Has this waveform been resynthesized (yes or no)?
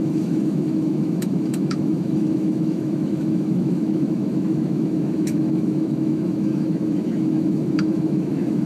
yes